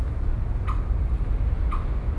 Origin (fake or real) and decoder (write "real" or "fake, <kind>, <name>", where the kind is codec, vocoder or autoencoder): real